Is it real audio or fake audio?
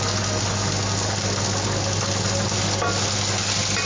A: real